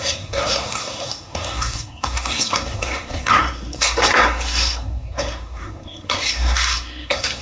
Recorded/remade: remade